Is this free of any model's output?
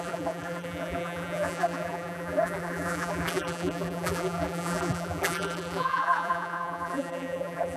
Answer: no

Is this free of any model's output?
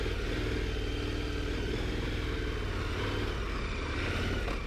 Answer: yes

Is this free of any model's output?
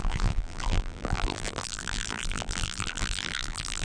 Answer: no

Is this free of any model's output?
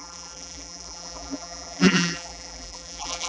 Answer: no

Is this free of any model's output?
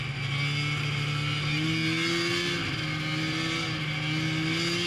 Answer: yes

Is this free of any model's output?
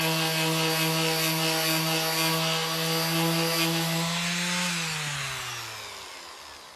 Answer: yes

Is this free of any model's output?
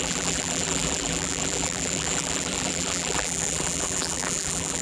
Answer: no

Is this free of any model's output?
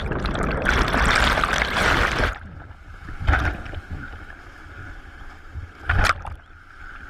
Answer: yes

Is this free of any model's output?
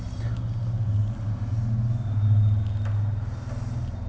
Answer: yes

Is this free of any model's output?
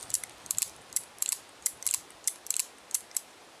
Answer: no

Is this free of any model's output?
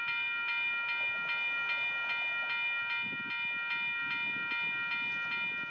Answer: yes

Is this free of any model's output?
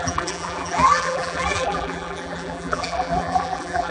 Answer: no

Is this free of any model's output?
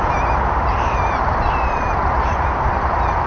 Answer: no